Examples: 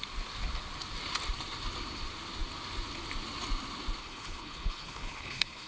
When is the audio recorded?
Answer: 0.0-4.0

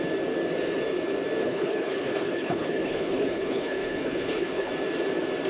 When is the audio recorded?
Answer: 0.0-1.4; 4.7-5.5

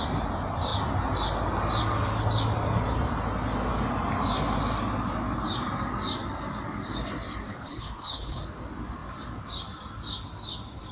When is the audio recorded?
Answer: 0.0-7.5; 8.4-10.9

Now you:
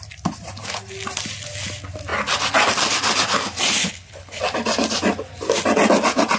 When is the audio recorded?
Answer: 0.0-3.8; 4.4-6.4